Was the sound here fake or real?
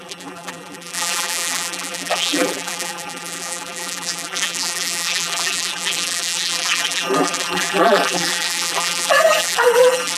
fake